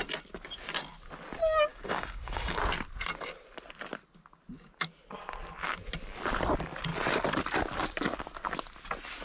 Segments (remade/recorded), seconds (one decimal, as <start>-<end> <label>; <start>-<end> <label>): 0.0-1.7 recorded; 1.7-2.6 remade; 2.6-9.2 recorded